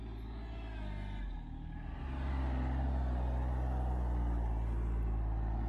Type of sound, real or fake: real